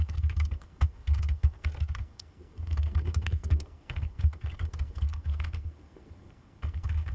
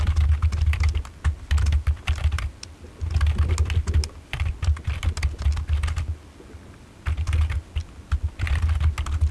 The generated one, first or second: first